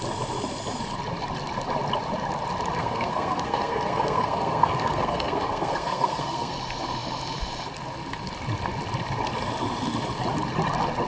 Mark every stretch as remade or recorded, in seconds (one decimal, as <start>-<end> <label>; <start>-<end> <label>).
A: 0.0-2.8 recorded; 2.8-6.5 remade; 6.5-11.1 recorded

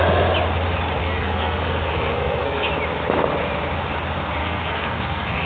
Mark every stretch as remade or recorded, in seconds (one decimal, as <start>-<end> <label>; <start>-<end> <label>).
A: 0.0-1.0 recorded; 1.0-2.7 remade; 2.7-4.4 recorded; 4.4-5.5 remade